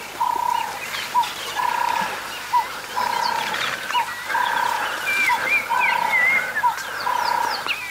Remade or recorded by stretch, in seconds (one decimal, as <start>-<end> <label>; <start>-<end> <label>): 0.0-7.9 recorded